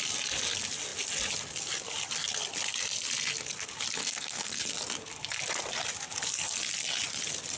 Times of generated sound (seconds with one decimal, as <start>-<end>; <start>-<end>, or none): 4.0-4.6